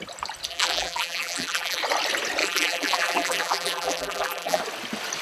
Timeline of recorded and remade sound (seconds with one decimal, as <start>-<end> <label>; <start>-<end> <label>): 0.0-0.5 recorded; 0.5-1.8 remade; 1.8-2.4 recorded; 2.4-4.6 remade; 4.6-5.2 recorded